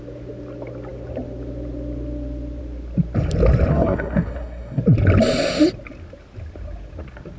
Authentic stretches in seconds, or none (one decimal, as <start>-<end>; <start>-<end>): 0.0-3.7; 4.8-7.4